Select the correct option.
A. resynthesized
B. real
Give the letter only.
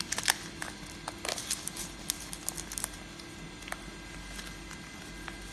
B